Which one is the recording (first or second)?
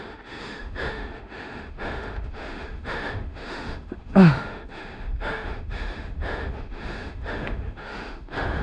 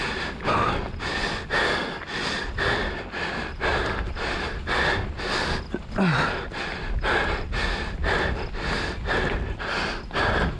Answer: second